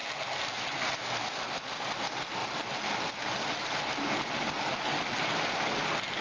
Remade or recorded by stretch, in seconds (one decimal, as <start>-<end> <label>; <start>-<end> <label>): 0.0-6.2 recorded